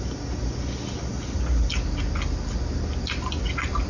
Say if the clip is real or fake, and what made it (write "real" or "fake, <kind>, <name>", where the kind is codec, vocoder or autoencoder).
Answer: real